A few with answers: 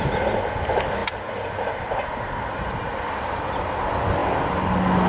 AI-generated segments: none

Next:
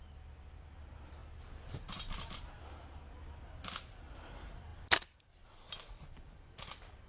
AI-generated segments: none

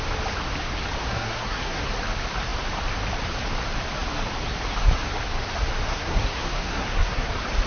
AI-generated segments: 1.0-1.8 (codec, SNAC); 5.9-7.3

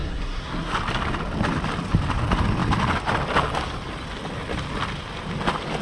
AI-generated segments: 0.0-0.7 (codec, SNAC)

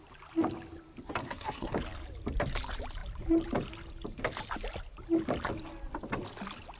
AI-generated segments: 1.2-1.8 (codec, SNAC)